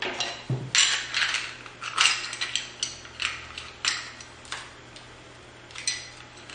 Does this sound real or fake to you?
real